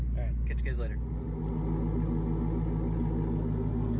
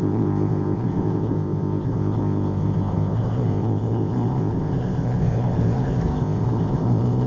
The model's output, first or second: second